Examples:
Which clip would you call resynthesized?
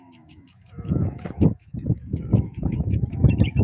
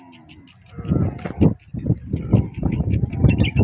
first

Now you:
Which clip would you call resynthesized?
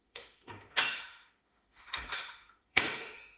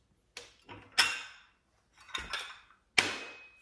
first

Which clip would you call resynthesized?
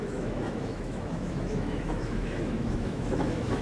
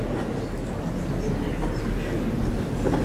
first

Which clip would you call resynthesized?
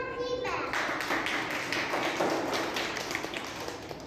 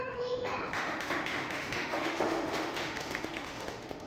second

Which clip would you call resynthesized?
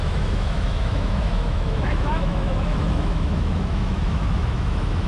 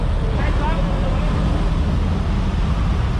first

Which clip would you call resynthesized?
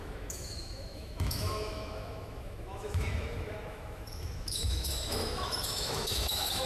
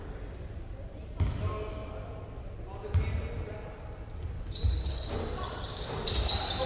first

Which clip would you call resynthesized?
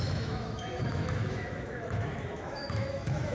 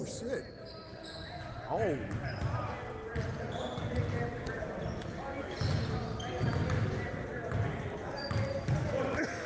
first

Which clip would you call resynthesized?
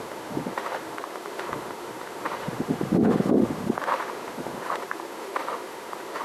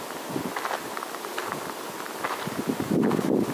first